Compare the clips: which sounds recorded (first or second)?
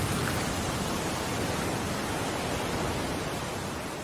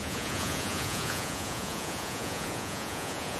first